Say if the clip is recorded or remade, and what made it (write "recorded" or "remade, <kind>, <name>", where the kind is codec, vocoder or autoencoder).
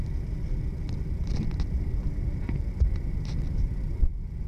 recorded